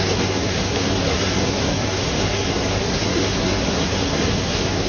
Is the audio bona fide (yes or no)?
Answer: no